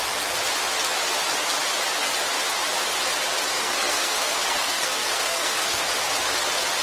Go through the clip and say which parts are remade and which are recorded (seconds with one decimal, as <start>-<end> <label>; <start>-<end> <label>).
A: 0.0-3.5 recorded; 3.5-5.8 remade; 5.8-6.8 recorded